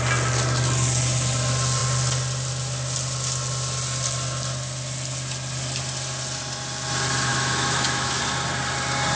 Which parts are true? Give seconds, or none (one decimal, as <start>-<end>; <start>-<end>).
0.0-7.3; 8.2-9.2

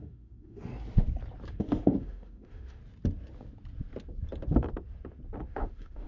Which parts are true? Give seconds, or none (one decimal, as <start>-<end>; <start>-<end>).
0.7-1.5; 2.8-5.5

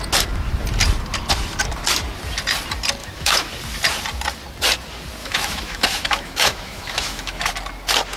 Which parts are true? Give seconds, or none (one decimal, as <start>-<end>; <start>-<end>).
0.0-3.0; 3.5-5.2; 7.5-8.2

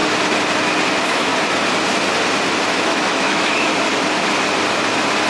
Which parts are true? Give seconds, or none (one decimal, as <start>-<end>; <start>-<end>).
0.0-0.9; 1.3-2.7; 3.7-5.3

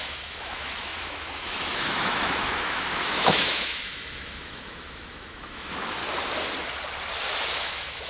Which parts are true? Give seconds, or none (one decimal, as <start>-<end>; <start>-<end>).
6.0-7.5

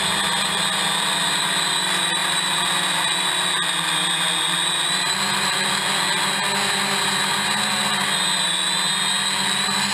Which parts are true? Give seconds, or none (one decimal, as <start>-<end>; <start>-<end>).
0.0-9.9

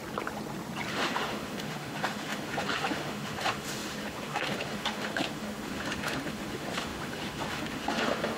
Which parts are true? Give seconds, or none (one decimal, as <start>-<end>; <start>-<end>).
0.0-0.9

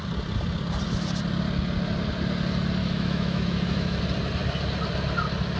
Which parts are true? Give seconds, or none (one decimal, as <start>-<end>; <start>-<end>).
0.0-2.8; 4.0-5.6